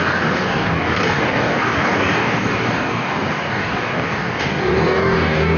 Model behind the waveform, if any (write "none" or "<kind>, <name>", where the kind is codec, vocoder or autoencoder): codec, DAC